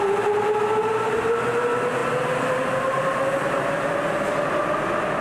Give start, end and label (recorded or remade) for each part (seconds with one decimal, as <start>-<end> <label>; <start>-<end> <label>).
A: 0.0-5.2 recorded